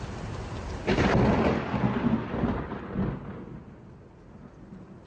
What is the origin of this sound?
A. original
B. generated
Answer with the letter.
A